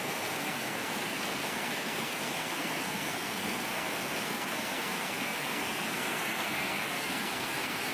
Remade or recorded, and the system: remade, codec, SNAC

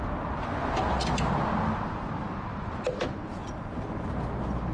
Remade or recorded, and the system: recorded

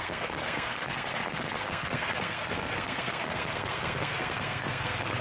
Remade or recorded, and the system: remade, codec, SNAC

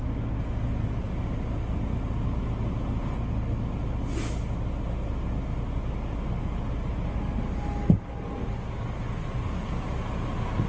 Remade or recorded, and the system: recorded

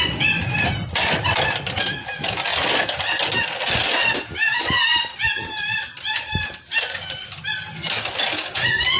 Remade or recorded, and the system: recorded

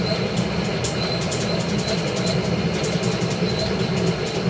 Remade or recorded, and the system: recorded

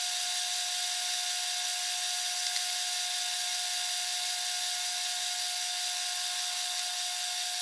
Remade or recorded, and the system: recorded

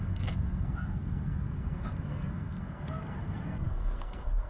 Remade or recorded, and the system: remade, codec, SNAC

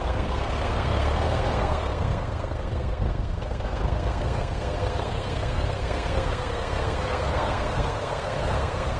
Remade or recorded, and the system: remade, codec, SNAC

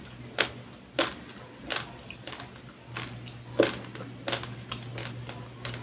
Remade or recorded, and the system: recorded